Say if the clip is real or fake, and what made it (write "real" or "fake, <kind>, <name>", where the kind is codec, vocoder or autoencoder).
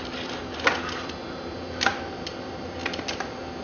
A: fake, vocoder, BigVGAN v2